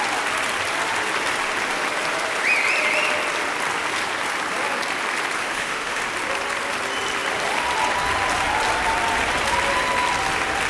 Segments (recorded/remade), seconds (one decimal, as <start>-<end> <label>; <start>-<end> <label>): 0.0-5.4 recorded; 5.4-6.0 remade; 6.0-10.7 recorded